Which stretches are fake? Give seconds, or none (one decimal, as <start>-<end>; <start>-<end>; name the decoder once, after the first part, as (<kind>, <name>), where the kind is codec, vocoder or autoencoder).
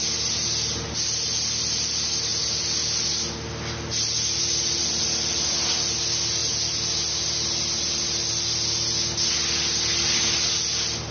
none